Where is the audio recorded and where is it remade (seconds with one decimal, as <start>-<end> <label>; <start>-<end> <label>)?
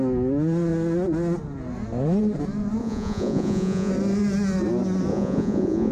0.0-2.8 recorded; 2.8-3.9 remade; 3.9-5.1 recorded; 5.1-5.9 remade